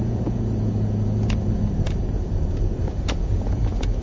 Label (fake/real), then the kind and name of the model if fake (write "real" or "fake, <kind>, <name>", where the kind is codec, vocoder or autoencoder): fake, vocoder, Vocos